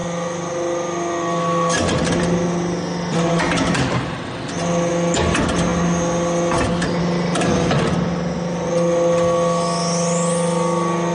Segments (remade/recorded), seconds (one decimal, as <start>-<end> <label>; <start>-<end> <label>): 0.0-11.1 recorded